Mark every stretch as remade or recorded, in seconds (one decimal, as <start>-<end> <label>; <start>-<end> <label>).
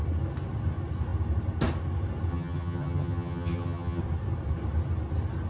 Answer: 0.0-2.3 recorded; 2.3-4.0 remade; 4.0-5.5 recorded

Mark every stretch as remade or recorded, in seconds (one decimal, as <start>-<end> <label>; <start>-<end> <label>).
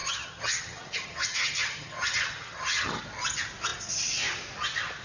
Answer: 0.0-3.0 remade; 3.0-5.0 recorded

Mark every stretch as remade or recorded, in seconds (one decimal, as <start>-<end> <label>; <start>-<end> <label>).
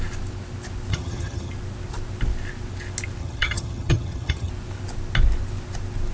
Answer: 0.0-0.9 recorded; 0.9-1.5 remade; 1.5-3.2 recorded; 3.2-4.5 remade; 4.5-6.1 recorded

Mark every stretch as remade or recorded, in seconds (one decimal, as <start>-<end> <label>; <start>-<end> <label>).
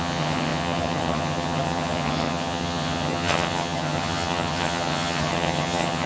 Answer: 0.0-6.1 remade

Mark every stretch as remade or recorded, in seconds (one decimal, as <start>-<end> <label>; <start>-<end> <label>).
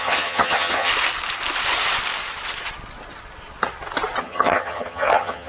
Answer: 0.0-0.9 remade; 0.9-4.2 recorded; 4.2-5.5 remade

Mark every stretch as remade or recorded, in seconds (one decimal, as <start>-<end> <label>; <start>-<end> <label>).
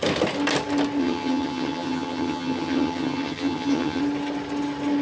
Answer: 0.0-1.0 recorded; 1.0-4.0 remade; 4.0-5.0 recorded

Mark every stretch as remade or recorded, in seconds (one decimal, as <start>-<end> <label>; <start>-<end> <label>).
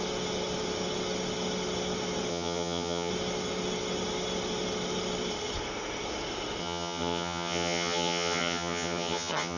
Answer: 0.0-2.3 recorded; 2.3-3.1 remade; 3.1-6.6 recorded; 6.6-9.6 remade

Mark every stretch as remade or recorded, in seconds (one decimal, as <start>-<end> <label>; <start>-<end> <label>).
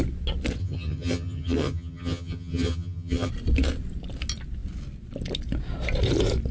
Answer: 0.0-0.6 recorded; 0.6-3.3 remade; 3.3-6.5 recorded